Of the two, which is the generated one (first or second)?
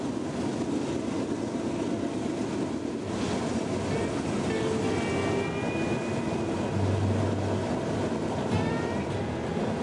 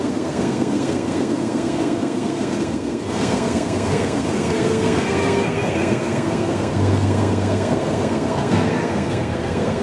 second